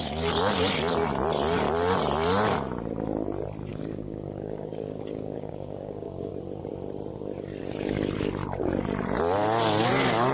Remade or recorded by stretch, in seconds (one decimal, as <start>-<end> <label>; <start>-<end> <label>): 0.0-3.7 recorded; 3.7-6.3 remade; 6.3-10.3 recorded